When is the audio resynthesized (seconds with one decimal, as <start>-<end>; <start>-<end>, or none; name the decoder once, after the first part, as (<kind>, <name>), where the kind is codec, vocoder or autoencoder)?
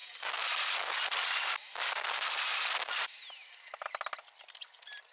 none